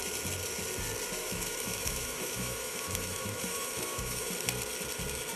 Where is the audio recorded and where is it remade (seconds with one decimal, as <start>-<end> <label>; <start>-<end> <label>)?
0.0-1.2 recorded; 1.2-4.3 remade; 4.3-5.4 recorded